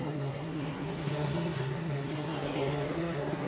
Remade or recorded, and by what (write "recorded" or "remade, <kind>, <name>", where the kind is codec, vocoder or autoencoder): remade, codec, SNAC